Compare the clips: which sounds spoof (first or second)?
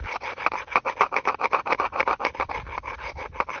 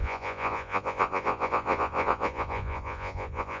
second